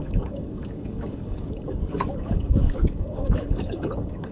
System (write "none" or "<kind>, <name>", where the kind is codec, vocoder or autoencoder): codec, DAC